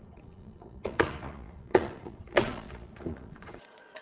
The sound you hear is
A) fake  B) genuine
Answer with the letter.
A